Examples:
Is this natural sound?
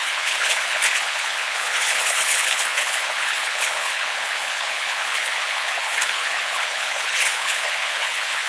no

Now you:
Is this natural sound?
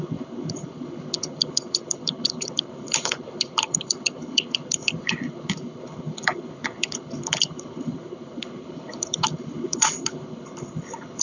no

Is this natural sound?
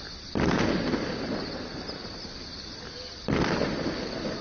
yes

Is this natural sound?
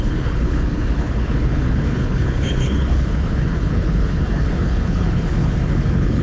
no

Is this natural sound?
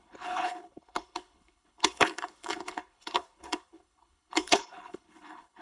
no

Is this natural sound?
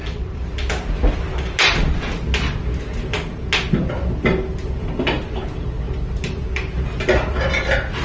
yes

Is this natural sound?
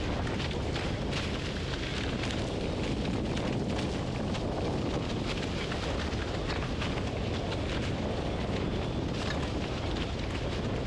yes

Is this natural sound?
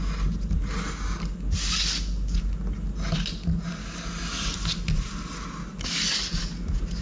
yes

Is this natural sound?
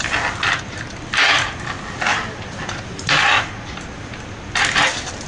yes